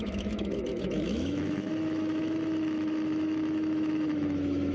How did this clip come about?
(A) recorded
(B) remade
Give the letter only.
B